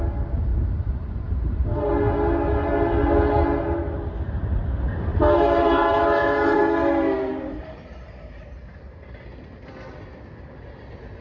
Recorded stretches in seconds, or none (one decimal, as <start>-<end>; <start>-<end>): 0.0-0.5; 1.9-5.1; 7.6-11.2